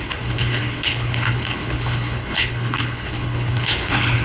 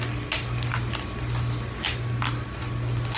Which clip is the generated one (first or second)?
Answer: first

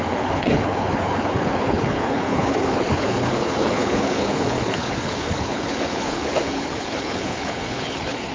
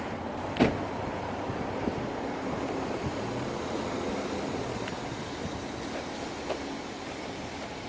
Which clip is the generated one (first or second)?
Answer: first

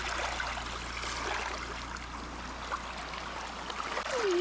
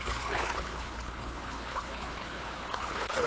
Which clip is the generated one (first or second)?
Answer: second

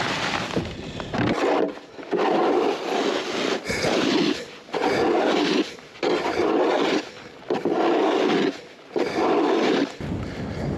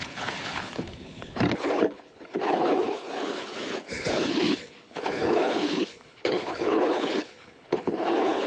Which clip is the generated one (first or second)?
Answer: second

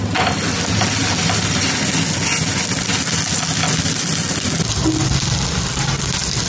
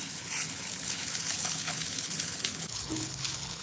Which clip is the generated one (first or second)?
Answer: second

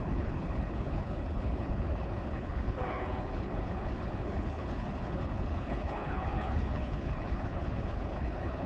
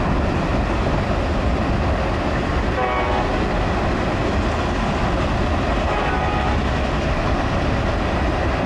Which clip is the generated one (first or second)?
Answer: first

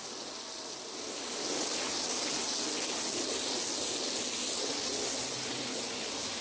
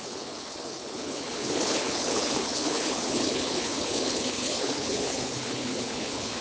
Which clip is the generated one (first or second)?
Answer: second